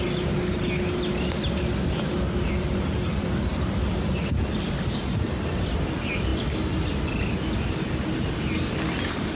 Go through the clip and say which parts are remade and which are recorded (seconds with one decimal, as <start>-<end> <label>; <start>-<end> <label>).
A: 0.0-9.3 recorded